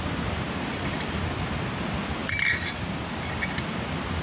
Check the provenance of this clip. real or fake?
real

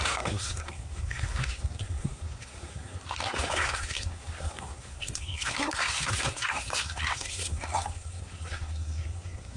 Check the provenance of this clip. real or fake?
fake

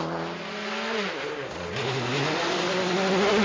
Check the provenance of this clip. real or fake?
real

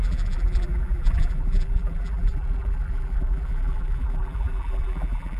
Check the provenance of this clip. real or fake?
fake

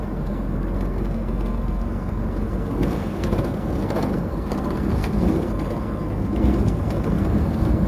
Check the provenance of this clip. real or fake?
fake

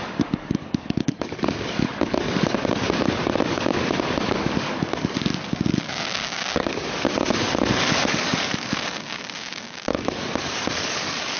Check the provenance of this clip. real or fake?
fake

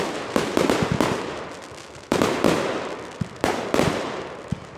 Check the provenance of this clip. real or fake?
real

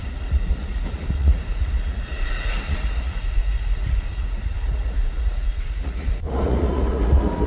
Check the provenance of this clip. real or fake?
fake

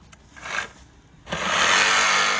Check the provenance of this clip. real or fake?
real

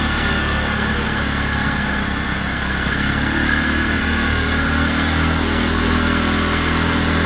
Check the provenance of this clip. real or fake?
fake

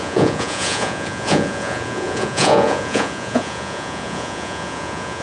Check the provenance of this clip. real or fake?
fake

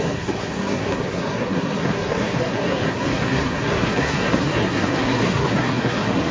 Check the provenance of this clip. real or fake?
fake